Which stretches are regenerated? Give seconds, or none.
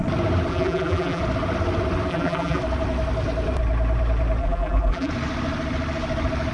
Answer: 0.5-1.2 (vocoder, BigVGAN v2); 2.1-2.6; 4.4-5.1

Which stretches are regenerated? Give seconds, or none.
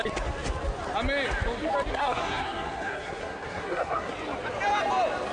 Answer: 1.9-4.1 (codec, SNAC)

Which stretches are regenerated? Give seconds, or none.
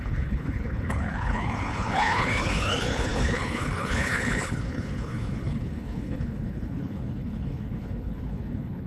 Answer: 0.0-8.9 (codec, HILCodec)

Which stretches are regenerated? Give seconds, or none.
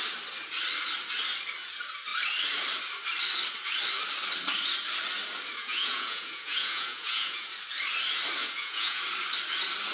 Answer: 5.6-7.5 (vocoder, Vocos); 8.4-9.0